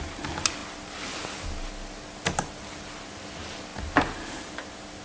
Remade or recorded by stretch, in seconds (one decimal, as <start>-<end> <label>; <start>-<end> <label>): 0.0-5.0 recorded